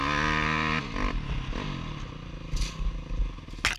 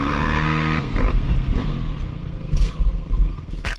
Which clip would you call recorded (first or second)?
first